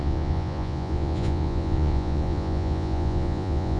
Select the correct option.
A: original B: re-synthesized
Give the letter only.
B